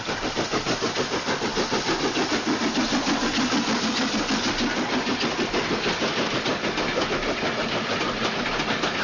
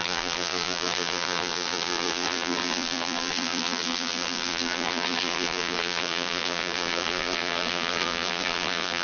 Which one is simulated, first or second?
second